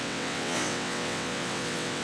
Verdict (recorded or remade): remade